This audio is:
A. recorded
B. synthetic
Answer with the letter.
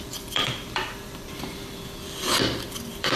B